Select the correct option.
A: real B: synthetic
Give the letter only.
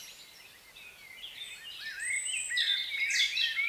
A